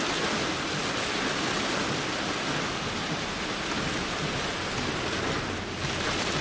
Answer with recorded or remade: recorded